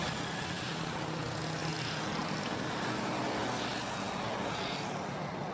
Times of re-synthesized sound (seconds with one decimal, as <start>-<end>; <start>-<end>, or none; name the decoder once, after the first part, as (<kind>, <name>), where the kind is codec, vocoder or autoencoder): none